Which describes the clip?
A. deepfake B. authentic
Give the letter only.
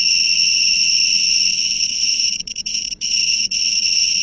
A